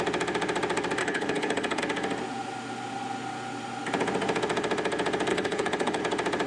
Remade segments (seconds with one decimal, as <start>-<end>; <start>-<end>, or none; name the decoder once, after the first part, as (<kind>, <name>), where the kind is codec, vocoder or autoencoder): 1.0-1.8 (codec, HILCodec); 5.3-6.0